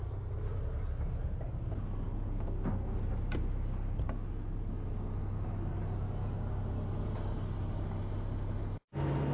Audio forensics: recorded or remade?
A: recorded